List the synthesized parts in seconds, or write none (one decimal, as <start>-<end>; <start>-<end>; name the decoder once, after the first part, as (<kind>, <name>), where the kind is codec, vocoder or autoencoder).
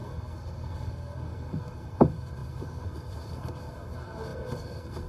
0.0-5.1 (codec, SNAC)